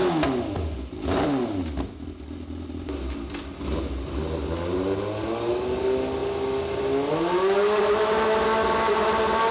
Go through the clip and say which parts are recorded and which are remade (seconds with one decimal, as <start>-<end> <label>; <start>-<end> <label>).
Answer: 0.0-9.5 recorded